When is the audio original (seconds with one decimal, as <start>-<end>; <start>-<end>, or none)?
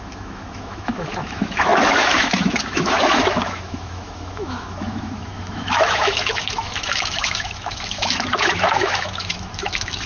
none